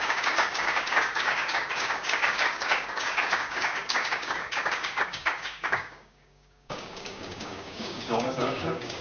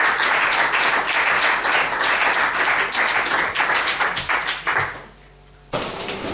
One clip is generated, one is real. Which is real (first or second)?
second